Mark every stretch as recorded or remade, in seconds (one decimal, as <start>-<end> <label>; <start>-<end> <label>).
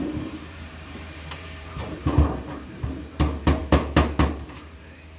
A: 0.0-3.1 remade; 3.1-5.2 recorded